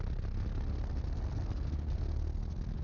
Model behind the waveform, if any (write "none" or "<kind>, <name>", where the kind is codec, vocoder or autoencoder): none